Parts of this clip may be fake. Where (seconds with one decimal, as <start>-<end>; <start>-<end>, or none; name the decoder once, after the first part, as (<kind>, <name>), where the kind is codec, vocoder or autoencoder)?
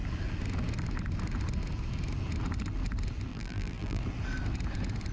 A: 3.3-4.0 (vocoder, BigVGAN v2)